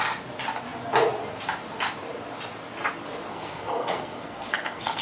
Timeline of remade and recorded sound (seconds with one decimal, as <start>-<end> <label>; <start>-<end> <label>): 0.0-3.3 recorded; 3.3-5.0 remade